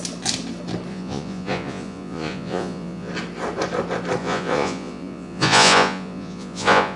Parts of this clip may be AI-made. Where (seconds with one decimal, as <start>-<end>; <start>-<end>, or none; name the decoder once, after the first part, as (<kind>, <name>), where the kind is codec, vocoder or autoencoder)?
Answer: 0.9-3.1 (vocoder, Vocos); 4.2-7.0